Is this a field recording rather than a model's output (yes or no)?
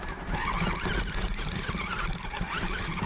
no